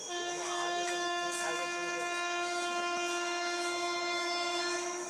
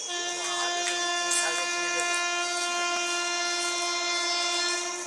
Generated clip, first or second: first